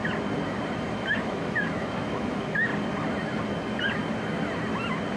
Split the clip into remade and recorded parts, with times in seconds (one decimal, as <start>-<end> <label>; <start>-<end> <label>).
0.0-0.9 recorded; 0.9-2.7 remade; 2.7-5.2 recorded

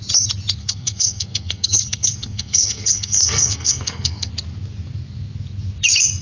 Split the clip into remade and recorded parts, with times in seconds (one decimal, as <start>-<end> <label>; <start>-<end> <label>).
0.0-0.6 recorded; 0.6-4.3 remade; 4.3-6.2 recorded

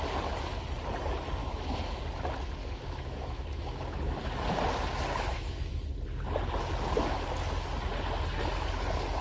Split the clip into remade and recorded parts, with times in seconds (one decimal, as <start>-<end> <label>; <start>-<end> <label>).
0.0-1.4 recorded; 1.4-2.0 remade; 2.0-2.6 recorded; 2.6-4.1 remade; 4.1-5.3 recorded; 5.3-5.8 remade; 5.8-9.2 recorded

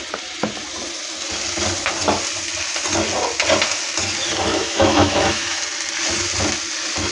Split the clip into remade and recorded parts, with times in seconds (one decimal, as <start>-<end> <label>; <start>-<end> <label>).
0.0-4.5 recorded; 4.5-5.6 remade; 5.6-7.1 recorded

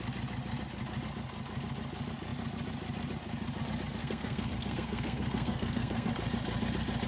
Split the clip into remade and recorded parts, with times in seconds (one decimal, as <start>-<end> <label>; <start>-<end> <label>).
0.0-4.0 recorded; 4.0-6.1 remade; 6.1-7.1 recorded